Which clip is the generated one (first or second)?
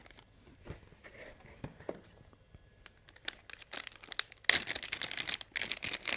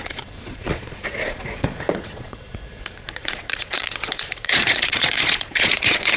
second